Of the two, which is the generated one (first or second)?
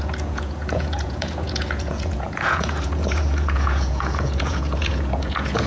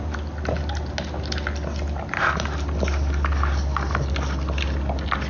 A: first